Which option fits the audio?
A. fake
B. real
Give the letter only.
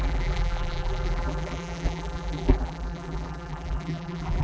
A